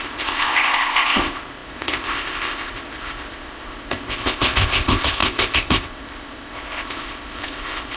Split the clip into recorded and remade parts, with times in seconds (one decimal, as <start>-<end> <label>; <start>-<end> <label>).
0.0-8.0 remade